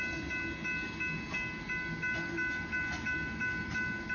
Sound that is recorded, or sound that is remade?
recorded